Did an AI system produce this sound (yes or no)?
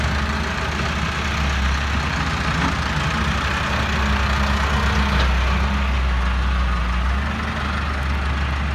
no